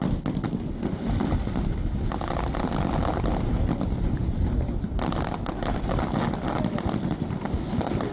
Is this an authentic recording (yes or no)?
yes